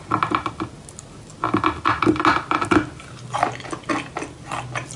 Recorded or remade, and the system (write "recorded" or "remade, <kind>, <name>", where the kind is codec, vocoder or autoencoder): recorded